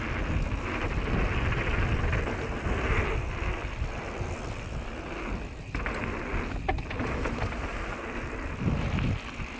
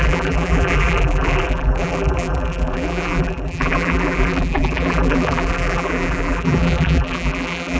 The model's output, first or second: second